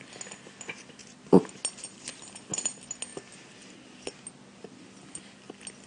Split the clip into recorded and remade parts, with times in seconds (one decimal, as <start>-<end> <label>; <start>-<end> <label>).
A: 0.0-5.9 recorded